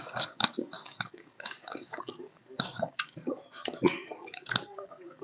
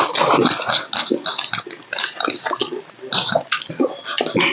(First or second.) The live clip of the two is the second